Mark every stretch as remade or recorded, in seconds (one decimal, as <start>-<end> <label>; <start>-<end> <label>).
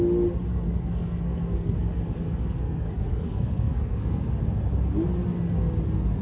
0.0-0.5 recorded; 0.5-4.2 remade; 4.2-6.2 recorded